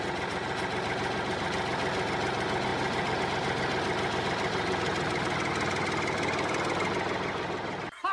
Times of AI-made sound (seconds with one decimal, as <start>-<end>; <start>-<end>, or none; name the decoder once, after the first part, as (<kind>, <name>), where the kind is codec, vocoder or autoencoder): none